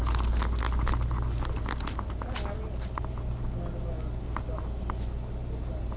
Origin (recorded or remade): recorded